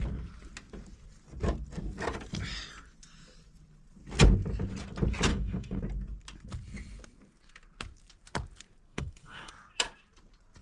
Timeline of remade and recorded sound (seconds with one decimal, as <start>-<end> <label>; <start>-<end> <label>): 0.0-5.3 recorded; 5.3-5.8 remade; 5.8-8.9 recorded; 8.9-9.5 remade; 9.5-10.6 recorded